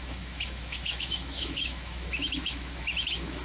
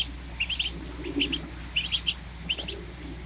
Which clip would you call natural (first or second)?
second